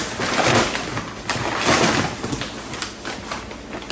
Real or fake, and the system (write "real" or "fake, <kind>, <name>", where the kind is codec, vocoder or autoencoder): real